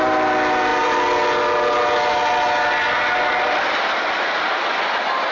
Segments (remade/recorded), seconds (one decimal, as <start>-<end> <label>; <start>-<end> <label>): 0.0-5.3 recorded